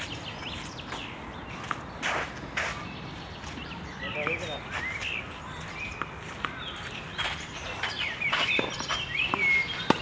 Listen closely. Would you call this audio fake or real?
real